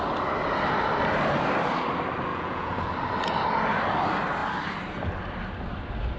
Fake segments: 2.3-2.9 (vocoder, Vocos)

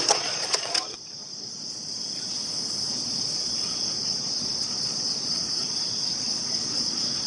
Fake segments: 0.0-2.4 (vocoder, Vocos); 2.9-7.3

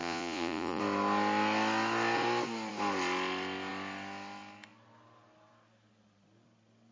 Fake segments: 0.0-0.8 (vocoder, Vocos)